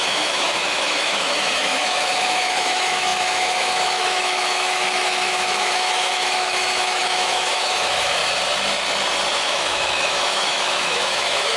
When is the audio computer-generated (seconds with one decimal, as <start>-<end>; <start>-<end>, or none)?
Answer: 0.0-8.2; 9.3-11.6